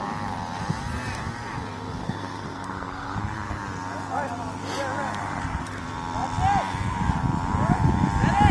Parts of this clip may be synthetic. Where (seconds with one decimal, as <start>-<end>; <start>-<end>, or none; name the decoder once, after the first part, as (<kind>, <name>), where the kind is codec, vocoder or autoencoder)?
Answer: 2.0-3.6 (codec, SNAC); 5.2-5.8